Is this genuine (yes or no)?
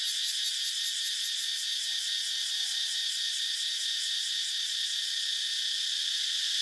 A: yes